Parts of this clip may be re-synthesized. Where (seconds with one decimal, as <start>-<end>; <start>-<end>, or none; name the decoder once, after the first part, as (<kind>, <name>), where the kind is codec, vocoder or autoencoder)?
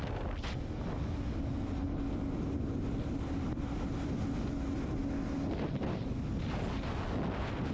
none